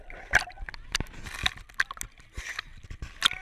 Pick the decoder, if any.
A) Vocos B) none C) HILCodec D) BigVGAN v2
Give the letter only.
B